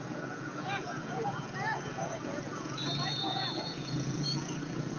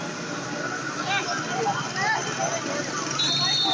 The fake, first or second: first